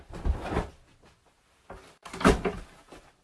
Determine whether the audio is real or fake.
real